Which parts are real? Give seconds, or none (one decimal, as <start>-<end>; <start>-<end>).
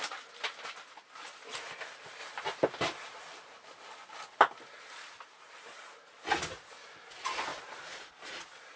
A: 0.0-8.8